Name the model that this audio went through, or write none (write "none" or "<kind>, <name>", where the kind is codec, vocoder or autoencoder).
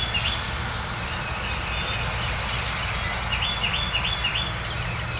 none